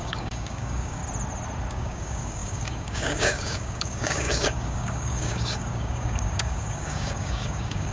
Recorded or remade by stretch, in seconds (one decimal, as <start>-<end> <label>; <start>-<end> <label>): 0.0-1.0 remade; 1.0-1.7 recorded; 1.7-7.9 remade